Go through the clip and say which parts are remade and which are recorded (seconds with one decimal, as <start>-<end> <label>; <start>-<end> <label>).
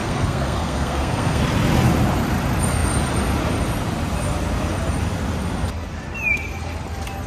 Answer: 0.0-1.4 remade; 1.4-7.3 recorded